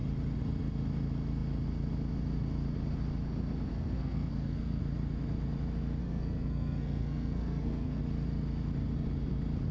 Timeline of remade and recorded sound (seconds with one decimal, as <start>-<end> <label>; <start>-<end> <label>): 0.0-3.7 recorded; 3.7-4.8 remade; 4.8-6.0 recorded; 6.0-8.0 remade; 8.0-9.7 recorded